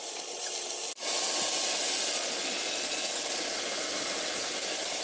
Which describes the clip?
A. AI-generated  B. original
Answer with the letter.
B